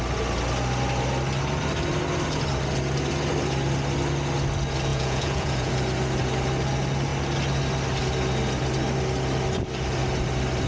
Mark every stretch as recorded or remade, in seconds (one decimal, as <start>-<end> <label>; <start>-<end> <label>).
0.0-4.9 recorded; 4.9-5.7 remade; 5.7-10.7 recorded